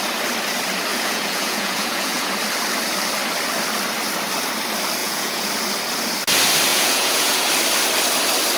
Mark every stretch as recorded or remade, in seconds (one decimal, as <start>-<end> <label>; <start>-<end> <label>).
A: 0.0-0.9 recorded; 0.9-2.3 remade; 2.3-5.0 recorded; 5.0-5.5 remade; 5.5-6.7 recorded; 6.7-7.4 remade; 7.4-8.6 recorded